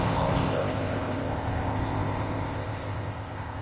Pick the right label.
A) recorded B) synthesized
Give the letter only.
B